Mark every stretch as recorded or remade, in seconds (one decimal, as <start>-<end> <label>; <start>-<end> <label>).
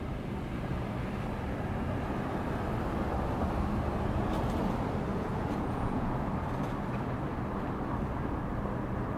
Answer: 0.0-5.1 recorded; 5.1-6.1 remade; 6.1-9.2 recorded